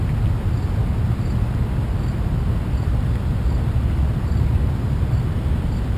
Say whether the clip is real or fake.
real